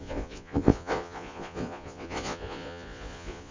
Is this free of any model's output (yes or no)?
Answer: no